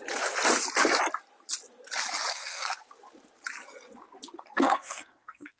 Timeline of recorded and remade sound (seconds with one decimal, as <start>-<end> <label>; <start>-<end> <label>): 0.0-2.3 recorded; 2.3-2.9 remade; 2.9-4.5 recorded; 4.5-5.6 remade